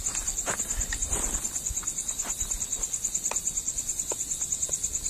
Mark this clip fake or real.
real